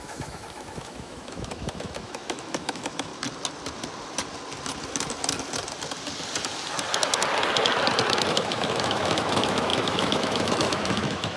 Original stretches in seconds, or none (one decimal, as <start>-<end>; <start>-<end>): 3.1-8.3